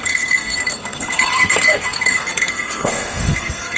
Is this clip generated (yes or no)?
yes